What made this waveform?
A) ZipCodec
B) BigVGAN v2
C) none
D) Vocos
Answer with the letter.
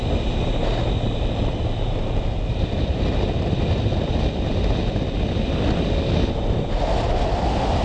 C